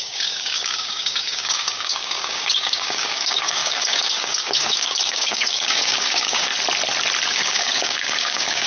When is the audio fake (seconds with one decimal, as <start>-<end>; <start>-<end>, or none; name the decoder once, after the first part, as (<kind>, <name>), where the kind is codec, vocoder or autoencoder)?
0.0-6.5 (codec, DAC); 7.3-8.7